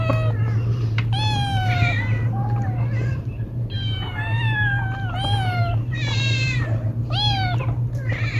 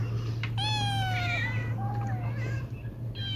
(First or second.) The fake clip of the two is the first